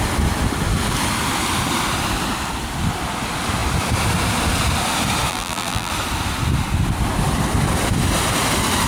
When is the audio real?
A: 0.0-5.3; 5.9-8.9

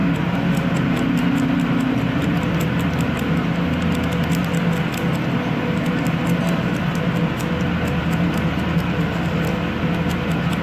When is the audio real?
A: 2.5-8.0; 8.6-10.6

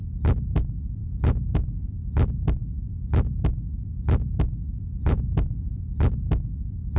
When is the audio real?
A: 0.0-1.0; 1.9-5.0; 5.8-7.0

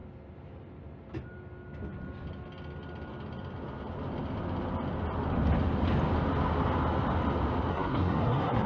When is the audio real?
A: 0.0-7.7

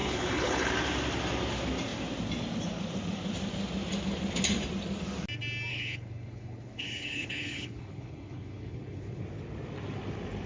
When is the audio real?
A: 0.7-5.7; 9.2-10.5

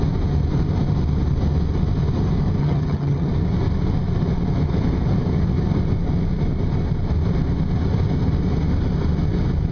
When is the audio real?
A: 0.0-2.6; 3.3-9.7

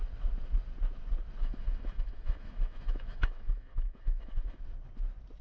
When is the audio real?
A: 0.0-1.4; 4.6-5.4

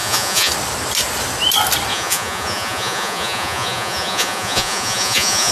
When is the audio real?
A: 0.5-1.9